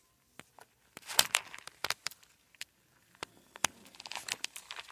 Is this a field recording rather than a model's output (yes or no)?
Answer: no